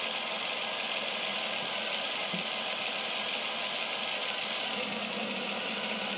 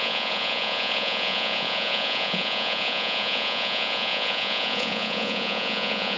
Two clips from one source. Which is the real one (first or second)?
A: first